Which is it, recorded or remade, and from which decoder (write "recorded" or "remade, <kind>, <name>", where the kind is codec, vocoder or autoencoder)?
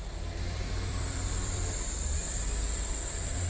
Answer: remade, vocoder, BigVGAN v2